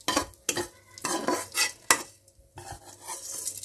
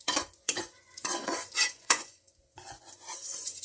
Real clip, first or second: first